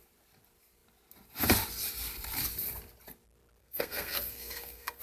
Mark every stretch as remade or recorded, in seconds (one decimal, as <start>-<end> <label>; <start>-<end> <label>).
0.0-3.6 recorded; 3.6-5.0 remade